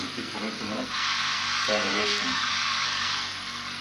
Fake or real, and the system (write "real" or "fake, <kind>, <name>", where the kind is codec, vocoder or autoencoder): fake, codec, SNAC